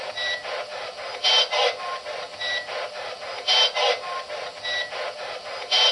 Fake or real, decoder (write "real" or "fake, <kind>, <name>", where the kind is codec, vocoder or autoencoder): real